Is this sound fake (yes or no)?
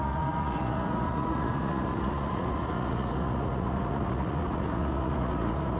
yes